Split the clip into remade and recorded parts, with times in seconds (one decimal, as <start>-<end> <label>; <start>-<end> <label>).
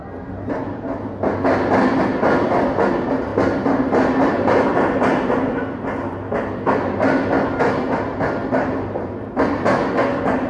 0.0-10.5 recorded